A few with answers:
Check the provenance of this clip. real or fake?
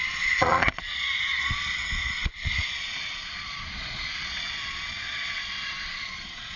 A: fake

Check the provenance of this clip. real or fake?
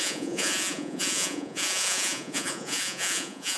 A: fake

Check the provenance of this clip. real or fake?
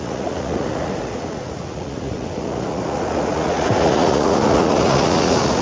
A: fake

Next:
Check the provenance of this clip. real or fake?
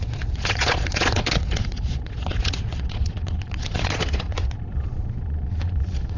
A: fake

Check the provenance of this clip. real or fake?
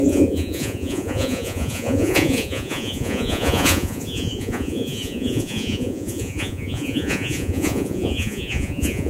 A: fake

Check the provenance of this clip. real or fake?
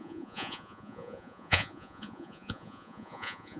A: fake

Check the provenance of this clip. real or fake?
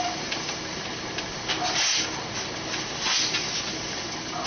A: real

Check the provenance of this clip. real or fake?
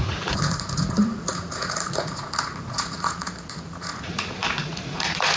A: fake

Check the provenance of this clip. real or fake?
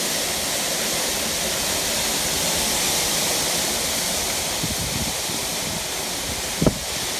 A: real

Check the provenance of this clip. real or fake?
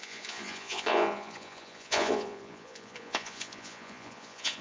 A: fake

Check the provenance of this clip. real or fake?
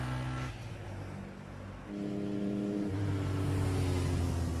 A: real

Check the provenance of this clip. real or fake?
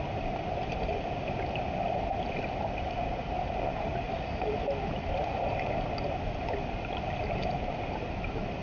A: real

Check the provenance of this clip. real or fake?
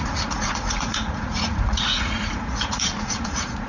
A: fake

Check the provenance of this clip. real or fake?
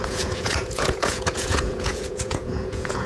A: fake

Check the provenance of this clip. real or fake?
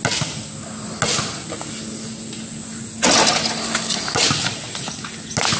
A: real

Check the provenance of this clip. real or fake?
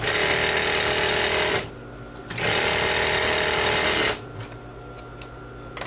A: real